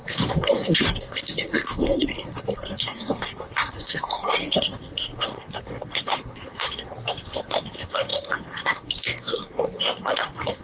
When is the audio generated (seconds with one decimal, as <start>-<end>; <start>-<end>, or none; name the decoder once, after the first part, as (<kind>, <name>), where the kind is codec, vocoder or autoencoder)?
0.0-10.6 (codec, SNAC)